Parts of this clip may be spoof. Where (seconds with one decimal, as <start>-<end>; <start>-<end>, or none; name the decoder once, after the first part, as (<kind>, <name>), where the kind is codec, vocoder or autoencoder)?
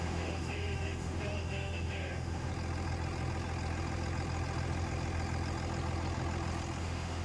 0.0-2.5 (autoencoder, DAC-VAE); 6.8-7.2